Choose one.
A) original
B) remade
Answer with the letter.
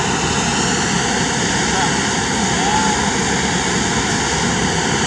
A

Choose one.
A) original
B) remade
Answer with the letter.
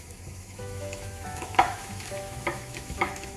B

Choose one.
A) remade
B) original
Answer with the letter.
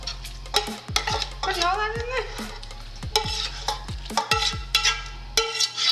B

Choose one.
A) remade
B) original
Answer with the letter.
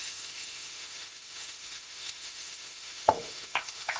A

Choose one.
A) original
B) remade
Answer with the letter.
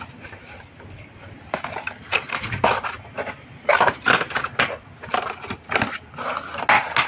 A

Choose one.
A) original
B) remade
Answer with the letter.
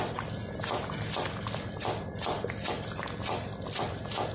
A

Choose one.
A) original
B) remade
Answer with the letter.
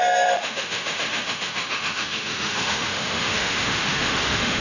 B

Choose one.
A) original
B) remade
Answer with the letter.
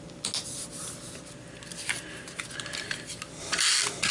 A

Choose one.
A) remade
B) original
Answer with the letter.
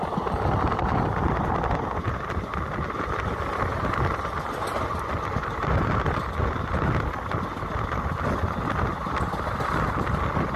B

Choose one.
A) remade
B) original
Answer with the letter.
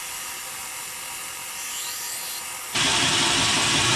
B